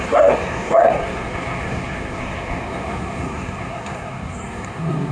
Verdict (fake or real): fake